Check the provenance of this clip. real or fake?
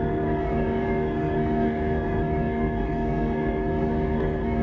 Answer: fake